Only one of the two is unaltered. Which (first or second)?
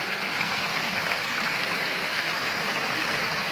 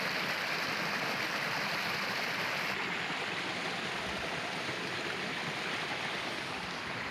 second